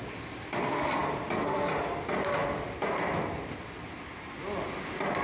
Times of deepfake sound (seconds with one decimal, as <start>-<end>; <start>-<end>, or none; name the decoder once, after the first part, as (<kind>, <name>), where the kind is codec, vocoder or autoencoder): 1.0-1.8 (vocoder, BigVGAN v2); 2.4-4.3